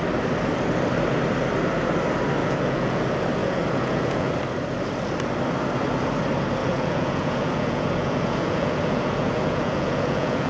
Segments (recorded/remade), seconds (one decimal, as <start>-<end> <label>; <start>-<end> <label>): 0.0-2.4 recorded; 2.4-3.0 remade; 3.0-3.4 recorded; 3.4-4.3 remade; 4.3-6.6 recorded; 6.6-10.5 remade

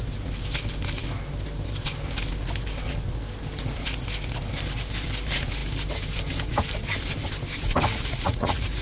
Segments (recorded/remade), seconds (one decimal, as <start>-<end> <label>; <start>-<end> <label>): 0.0-7.9 recorded; 7.9-8.8 remade